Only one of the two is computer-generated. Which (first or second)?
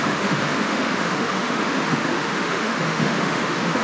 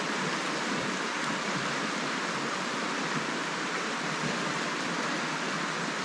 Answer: first